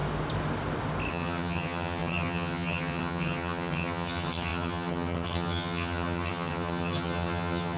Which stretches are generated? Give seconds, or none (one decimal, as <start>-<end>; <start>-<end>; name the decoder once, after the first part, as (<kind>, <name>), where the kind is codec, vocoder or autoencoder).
1.1-7.8 (vocoder, HiFi-GAN)